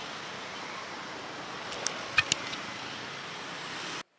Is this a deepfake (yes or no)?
no